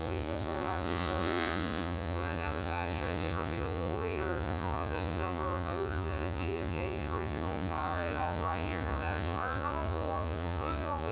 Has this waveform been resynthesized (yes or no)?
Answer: yes